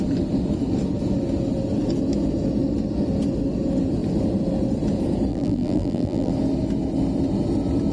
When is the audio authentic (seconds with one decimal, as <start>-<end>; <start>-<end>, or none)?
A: 0.0-5.3; 6.3-7.9